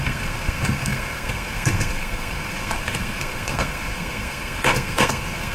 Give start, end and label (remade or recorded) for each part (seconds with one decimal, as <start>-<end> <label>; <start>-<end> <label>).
0.0-5.5 remade